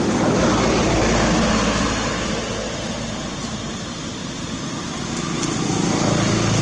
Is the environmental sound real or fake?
real